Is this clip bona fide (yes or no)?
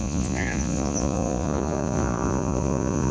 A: no